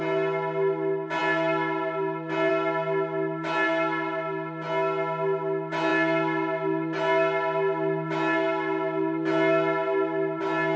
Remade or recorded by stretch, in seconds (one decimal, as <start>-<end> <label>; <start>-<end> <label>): 0.0-10.8 recorded